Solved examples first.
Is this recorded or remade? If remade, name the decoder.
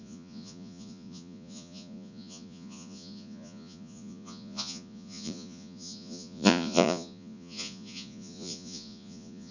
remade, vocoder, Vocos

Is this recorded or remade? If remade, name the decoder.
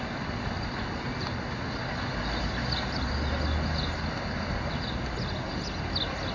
recorded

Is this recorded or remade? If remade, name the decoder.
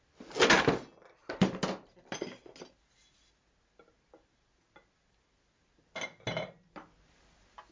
recorded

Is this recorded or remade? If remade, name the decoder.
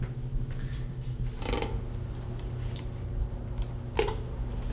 recorded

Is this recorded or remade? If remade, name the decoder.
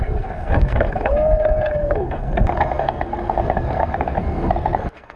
remade, codec, SNAC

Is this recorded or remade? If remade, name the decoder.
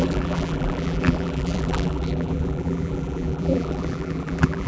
remade, vocoder, BigVGAN v2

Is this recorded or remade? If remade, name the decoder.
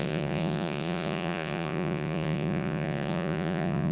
remade, vocoder, Vocos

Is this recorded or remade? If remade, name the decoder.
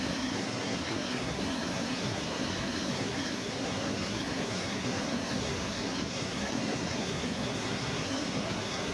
remade, codec, SNAC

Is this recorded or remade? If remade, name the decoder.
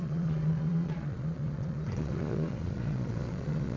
remade, vocoder, Vocos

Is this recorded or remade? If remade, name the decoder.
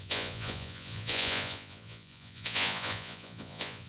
remade, vocoder, Vocos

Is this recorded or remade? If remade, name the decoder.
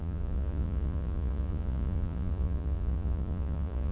remade, vocoder, Vocos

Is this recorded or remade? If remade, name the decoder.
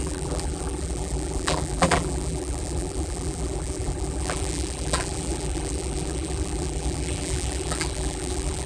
remade, vocoder, BigVGAN v2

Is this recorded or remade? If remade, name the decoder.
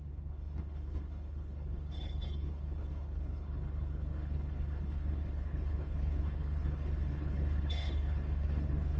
remade, codec, HILCodec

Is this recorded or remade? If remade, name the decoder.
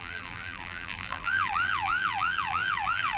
remade, vocoder, BigVGAN v2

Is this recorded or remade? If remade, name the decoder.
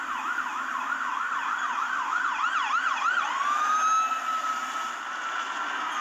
recorded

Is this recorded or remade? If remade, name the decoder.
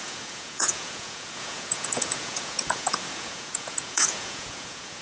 remade, vocoder, Vocos